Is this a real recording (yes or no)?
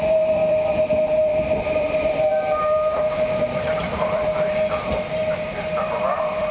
no